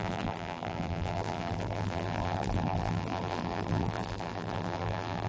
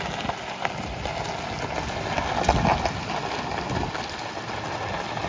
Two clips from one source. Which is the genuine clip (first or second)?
second